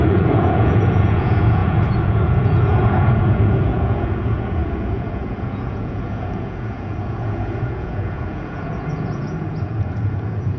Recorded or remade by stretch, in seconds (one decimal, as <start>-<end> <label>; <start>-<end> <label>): 0.0-10.6 remade